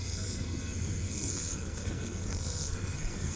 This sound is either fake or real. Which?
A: fake